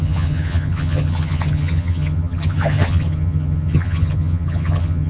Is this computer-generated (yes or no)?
yes